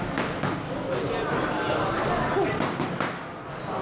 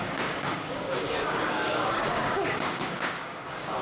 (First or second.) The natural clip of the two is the first